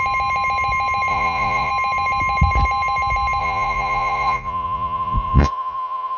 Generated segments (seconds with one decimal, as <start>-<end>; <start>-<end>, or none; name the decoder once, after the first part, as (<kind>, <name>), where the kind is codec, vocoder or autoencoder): 1.1-1.7 (vocoder, Vocos); 3.4-6.2